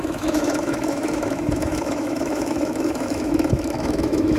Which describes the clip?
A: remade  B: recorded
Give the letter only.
A